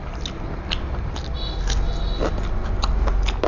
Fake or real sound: real